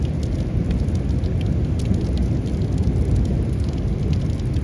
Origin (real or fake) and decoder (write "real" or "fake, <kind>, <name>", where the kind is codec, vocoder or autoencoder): real